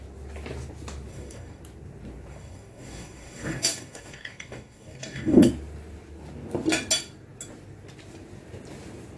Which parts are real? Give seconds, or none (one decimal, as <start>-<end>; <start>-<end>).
0.0-1.1; 1.6-2.3; 5.5-9.2